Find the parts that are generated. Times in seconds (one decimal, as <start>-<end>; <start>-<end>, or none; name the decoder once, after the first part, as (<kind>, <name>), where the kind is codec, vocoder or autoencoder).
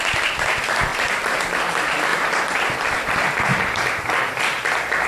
2.1-3.4 (vocoder, BigVGAN v2)